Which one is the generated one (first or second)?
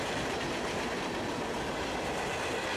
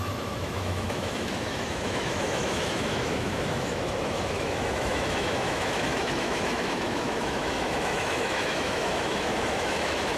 second